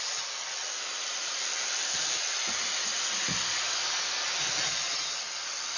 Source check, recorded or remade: recorded